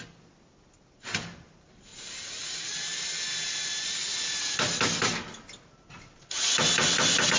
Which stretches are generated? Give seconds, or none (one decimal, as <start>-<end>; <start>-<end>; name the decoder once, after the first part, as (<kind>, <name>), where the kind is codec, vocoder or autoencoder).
none